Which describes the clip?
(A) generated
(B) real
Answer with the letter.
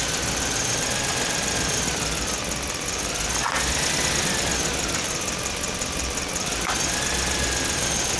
B